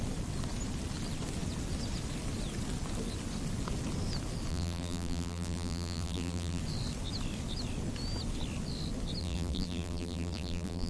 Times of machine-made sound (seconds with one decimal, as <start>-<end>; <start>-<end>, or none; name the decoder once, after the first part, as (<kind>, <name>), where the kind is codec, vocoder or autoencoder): 4.5-6.6 (vocoder, BigVGAN v2); 9.2-10.9